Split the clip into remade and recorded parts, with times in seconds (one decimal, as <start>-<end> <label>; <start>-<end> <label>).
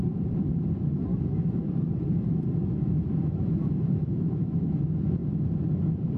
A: 0.0-1.1 recorded; 1.1-1.7 remade; 1.7-2.6 recorded; 2.6-4.7 remade; 4.7-6.2 recorded